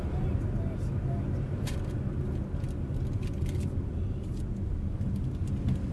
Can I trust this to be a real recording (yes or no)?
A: yes